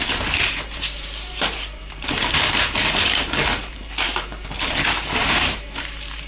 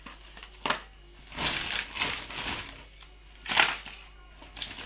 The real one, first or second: second